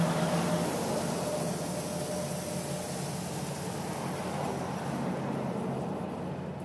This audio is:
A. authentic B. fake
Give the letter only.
A